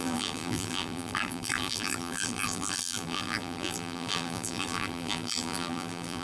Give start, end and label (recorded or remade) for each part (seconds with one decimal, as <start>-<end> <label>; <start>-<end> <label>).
0.0-6.2 remade